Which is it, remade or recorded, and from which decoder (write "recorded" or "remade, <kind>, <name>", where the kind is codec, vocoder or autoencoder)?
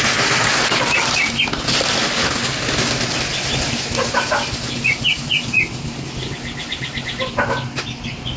recorded